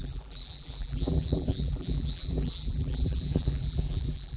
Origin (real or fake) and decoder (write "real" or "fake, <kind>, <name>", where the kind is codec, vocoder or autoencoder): fake, vocoder, BigVGAN v2